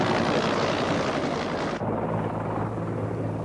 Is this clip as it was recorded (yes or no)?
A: yes